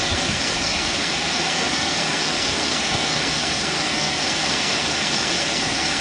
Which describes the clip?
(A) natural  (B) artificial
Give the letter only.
B